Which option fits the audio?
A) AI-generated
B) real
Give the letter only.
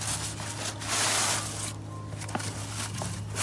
B